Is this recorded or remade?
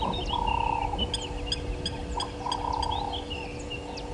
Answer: recorded